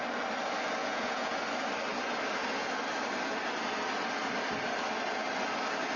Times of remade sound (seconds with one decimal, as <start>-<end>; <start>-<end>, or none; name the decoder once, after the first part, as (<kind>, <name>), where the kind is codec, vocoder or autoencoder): 0.8-1.4 (vocoder, Vocos)